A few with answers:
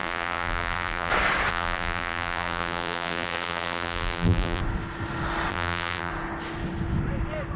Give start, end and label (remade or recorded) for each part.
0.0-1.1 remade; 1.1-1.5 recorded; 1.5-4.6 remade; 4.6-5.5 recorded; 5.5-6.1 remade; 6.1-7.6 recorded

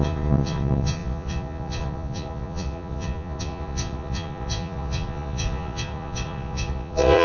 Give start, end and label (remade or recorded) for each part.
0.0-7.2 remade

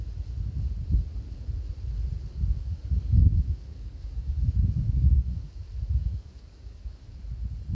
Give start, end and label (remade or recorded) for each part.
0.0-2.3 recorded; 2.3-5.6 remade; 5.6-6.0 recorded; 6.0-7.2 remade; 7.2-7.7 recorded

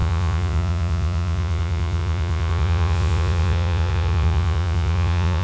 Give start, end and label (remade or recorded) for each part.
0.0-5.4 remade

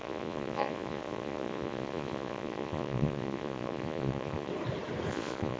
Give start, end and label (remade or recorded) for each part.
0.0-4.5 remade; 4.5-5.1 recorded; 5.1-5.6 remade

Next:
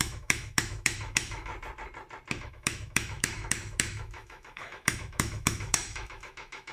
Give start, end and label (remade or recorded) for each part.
0.0-1.5 remade; 1.5-2.3 recorded; 2.3-6.7 remade

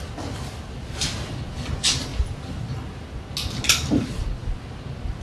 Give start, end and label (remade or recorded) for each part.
0.0-5.2 recorded

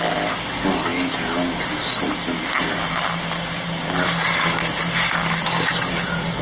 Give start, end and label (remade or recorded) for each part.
0.0-6.4 recorded